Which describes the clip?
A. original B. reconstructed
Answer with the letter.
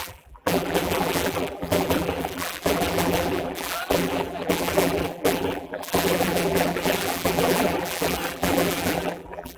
B